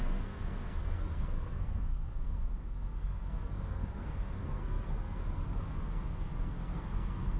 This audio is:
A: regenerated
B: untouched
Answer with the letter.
A